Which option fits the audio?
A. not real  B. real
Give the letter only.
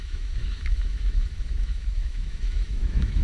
A